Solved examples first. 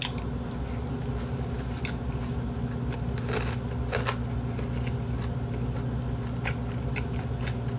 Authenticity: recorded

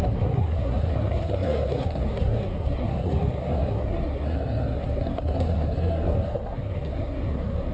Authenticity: remade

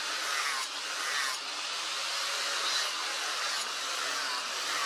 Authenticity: recorded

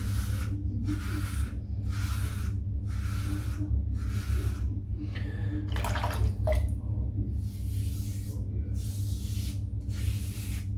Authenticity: recorded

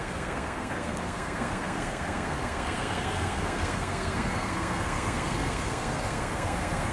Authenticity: remade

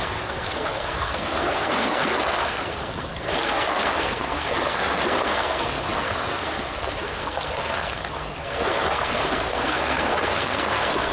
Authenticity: remade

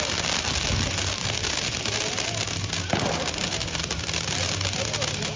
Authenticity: recorded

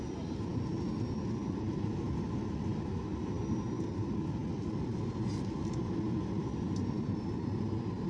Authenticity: recorded